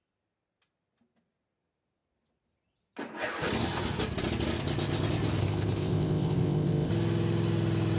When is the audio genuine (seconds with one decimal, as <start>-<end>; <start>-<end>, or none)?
0.0-5.4; 6.9-8.0